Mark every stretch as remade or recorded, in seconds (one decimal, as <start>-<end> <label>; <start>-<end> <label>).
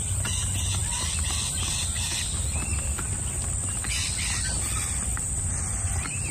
0.0-0.8 remade; 0.8-4.6 recorded; 4.6-6.3 remade